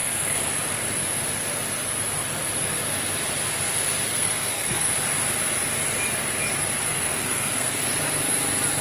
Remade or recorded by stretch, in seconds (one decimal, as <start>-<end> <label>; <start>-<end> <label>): 0.0-0.5 remade; 0.5-4.1 recorded; 4.1-4.9 remade; 4.9-6.9 recorded; 6.9-7.9 remade; 7.9-8.8 recorded